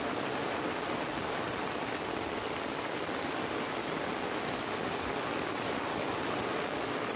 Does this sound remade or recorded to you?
recorded